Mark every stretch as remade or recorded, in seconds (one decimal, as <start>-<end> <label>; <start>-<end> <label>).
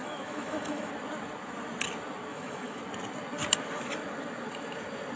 0.0-0.9 remade; 0.9-2.3 recorded; 2.3-2.8 remade; 2.8-5.2 recorded